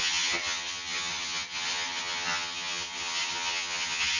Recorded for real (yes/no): no